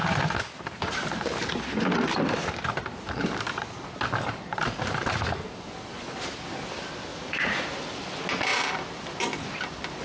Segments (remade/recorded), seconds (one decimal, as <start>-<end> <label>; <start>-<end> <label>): 0.0-7.1 recorded; 7.1-7.7 remade; 7.7-10.0 recorded